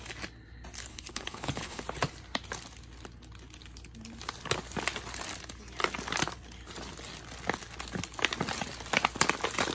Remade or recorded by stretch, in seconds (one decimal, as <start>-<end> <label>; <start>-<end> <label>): 0.0-0.9 recorded; 0.9-1.8 remade; 1.8-9.7 recorded

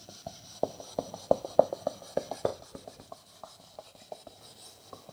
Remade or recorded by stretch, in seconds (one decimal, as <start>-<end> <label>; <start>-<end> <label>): 0.0-2.5 recorded; 2.5-4.4 remade; 4.4-5.1 recorded

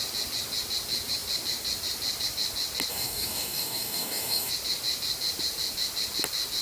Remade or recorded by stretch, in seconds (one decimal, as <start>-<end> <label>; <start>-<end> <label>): 0.0-2.9 recorded; 2.9-4.5 remade; 4.5-6.6 recorded

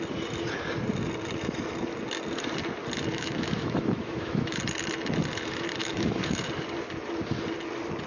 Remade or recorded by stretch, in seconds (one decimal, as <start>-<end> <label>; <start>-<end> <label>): 0.0-3.1 recorded; 3.1-4.6 remade; 4.6-5.8 recorded; 5.8-6.5 remade; 6.5-8.1 recorded

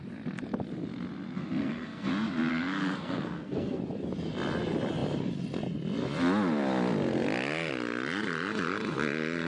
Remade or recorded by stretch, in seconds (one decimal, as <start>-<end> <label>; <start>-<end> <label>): 0.0-1.6 recorded; 1.6-2.1 remade; 2.1-2.5 recorded; 2.5-3.8 remade; 3.8-9.5 recorded

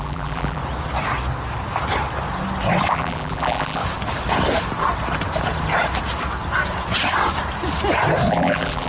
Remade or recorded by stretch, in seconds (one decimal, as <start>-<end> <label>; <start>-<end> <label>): 0.0-0.6 remade; 0.6-2.9 recorded; 2.9-3.8 remade; 3.8-8.3 recorded; 8.3-8.9 remade

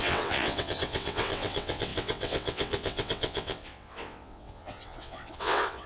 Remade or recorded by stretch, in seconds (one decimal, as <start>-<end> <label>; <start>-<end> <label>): 0.0-5.9 remade